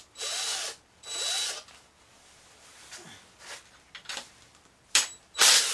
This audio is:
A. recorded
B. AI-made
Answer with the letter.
A